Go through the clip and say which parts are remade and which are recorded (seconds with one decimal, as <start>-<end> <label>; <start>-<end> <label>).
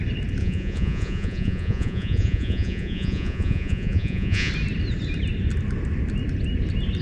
0.0-0.4 recorded; 0.4-4.5 remade; 4.5-7.0 recorded